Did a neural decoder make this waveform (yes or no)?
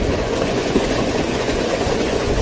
yes